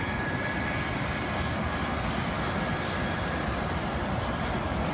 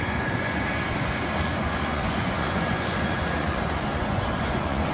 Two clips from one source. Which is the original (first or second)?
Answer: first